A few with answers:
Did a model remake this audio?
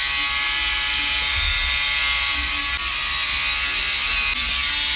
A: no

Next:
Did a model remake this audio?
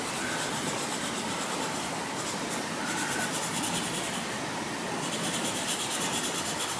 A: no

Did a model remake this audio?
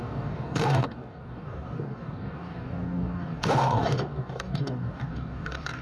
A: yes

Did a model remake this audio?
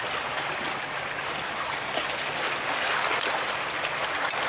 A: no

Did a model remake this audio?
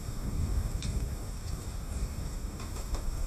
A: yes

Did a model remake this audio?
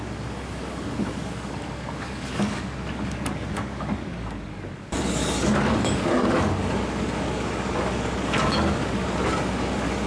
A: yes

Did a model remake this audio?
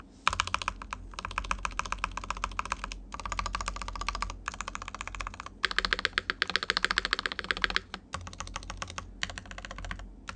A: no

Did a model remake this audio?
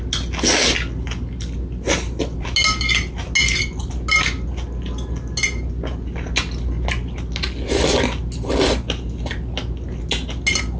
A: no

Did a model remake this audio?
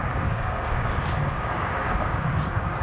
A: yes